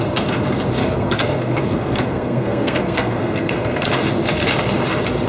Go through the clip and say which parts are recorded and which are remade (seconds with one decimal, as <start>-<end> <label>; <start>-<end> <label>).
0.0-0.8 recorded; 0.8-3.9 remade; 3.9-5.3 recorded